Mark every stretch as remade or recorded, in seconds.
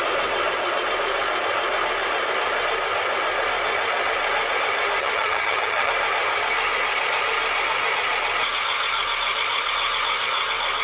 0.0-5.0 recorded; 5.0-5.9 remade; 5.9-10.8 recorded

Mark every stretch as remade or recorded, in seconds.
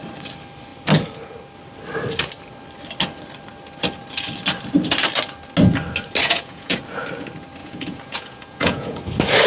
0.0-6.2 recorded; 6.2-6.8 remade; 6.8-7.6 recorded; 7.6-9.0 remade; 9.0-9.5 recorded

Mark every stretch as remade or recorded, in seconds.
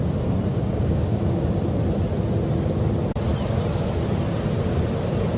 0.0-0.5 recorded; 0.5-1.4 remade; 1.4-5.4 recorded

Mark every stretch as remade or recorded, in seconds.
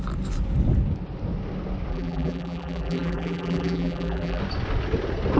0.0-1.9 recorded; 1.9-4.4 remade; 4.4-5.4 recorded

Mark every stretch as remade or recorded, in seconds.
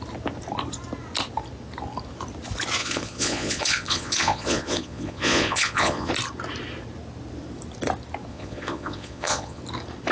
0.0-2.8 recorded; 2.8-6.1 remade; 6.1-8.3 recorded; 8.3-9.6 remade; 9.6-10.1 recorded